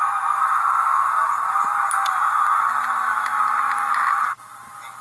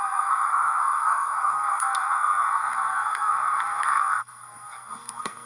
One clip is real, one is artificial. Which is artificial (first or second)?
second